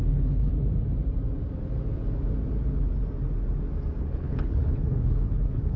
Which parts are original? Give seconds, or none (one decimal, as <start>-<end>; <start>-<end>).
0.5-4.0